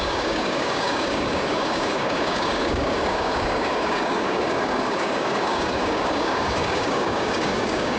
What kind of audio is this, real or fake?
fake